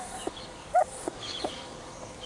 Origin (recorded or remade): remade